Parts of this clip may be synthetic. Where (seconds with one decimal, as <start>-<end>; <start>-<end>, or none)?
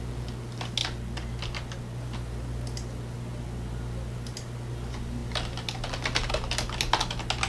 none